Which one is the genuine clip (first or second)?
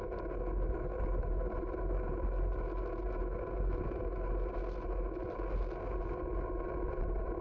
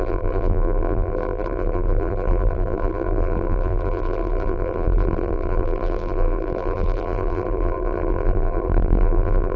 first